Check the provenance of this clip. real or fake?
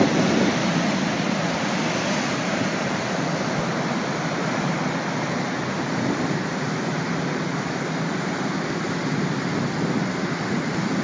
real